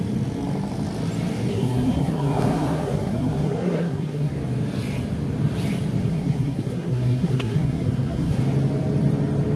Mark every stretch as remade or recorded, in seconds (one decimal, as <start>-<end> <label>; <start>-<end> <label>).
0.0-1.5 recorded; 1.5-4.3 remade; 4.3-6.0 recorded; 6.0-8.4 remade; 8.4-9.6 recorded